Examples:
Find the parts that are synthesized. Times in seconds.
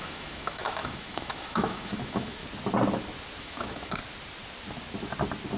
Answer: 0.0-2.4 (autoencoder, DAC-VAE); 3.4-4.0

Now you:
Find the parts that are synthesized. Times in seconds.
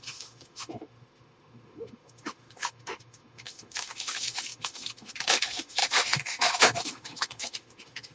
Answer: 0.0-8.1 (autoencoder, DAC-VAE)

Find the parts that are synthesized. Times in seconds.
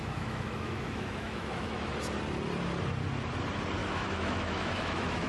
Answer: 0.0-1.9 (autoencoder, DAC-VAE); 3.8-5.3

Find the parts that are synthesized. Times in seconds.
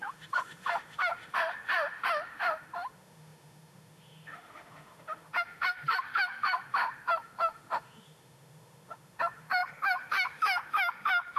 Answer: 0.0-11.4 (autoencoder, DAC-VAE)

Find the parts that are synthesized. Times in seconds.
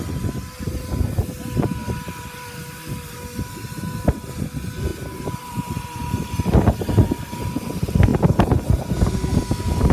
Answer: none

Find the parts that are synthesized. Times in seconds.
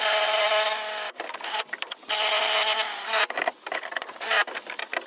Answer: none